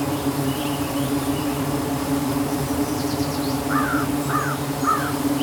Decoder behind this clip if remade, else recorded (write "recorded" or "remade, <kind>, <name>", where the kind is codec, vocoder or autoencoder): remade, vocoder, BigVGAN v2